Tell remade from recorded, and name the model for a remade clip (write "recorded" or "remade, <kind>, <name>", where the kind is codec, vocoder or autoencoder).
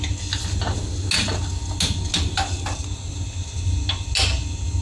recorded